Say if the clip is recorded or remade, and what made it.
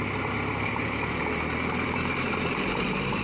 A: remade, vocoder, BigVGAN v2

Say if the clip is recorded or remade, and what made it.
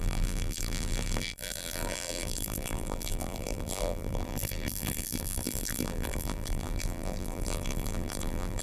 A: remade, vocoder, BigVGAN v2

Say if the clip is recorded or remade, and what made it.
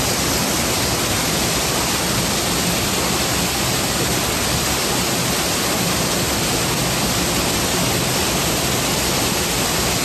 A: recorded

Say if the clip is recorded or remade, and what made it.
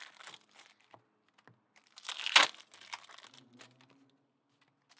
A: recorded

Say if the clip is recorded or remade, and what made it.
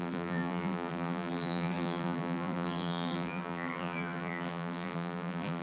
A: remade, vocoder, BigVGAN v2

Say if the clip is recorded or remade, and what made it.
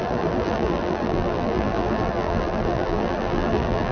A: remade, vocoder, BigVGAN v2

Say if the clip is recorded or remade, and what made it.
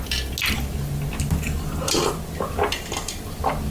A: recorded